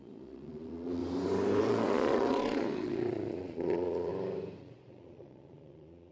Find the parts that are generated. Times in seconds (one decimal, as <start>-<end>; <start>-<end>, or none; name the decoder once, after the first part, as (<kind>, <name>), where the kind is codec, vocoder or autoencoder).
0.0-1.0 (vocoder, Vocos); 1.6-4.1; 4.6-6.1